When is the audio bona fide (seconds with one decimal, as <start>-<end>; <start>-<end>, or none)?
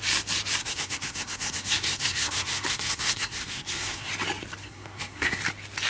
0.0-0.6; 4.1-4.6; 5.4-5.9